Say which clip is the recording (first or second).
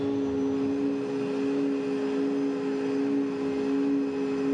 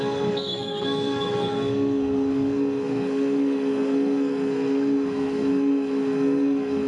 first